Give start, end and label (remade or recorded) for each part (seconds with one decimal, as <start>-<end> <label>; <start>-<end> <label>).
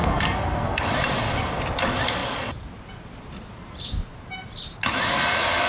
0.0-0.8 remade; 0.8-5.7 recorded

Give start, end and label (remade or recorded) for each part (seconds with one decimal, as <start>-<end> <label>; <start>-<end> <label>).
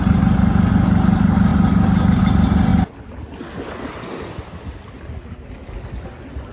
0.0-6.5 recorded